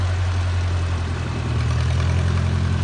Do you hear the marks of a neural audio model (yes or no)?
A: no